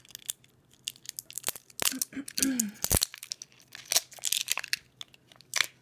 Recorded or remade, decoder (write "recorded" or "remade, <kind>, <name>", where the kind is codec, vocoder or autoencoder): recorded